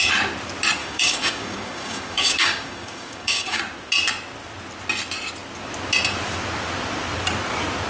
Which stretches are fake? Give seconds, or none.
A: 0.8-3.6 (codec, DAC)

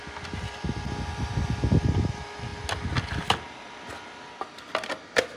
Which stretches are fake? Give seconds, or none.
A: none